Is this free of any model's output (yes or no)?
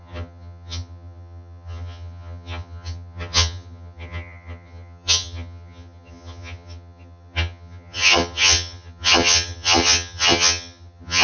no